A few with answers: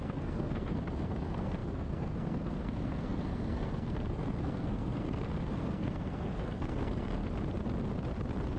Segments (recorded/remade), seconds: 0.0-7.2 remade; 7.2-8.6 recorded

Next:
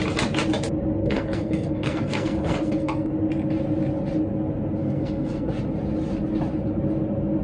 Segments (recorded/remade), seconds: 0.0-1.0 recorded; 1.0-3.1 remade; 3.1-4.8 recorded; 4.8-5.5 remade; 5.5-7.4 recorded

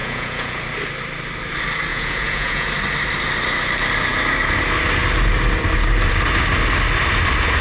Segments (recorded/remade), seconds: 0.0-0.6 remade; 0.6-1.9 recorded; 1.9-2.7 remade; 2.7-7.6 recorded

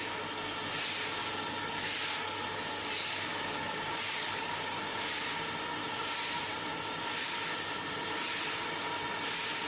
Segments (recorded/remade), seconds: 0.0-1.2 recorded; 1.2-4.8 remade; 4.8-9.7 recorded

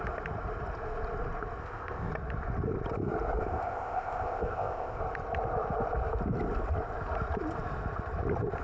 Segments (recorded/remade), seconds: 0.0-1.6 recorded; 1.6-2.1 remade; 2.1-3.4 recorded; 3.4-5.0 remade; 5.0-8.6 recorded

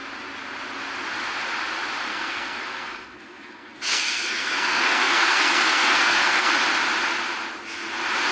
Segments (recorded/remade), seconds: 0.0-2.1 recorded; 2.1-6.5 remade; 6.5-8.3 recorded

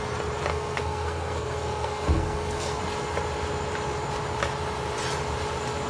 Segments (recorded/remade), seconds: 0.0-0.5 recorded; 0.5-2.8 remade; 2.8-5.9 recorded